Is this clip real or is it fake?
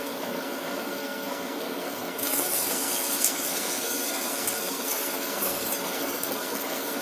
fake